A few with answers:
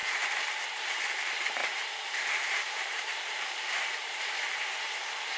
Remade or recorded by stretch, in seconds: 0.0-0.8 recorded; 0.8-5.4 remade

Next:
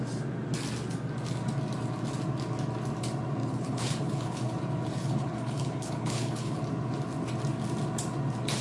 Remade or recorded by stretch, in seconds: 0.0-3.4 recorded; 3.4-4.5 remade; 4.5-4.9 recorded; 4.9-6.6 remade; 6.6-8.6 recorded